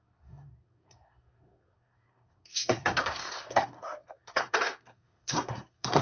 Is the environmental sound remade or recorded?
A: remade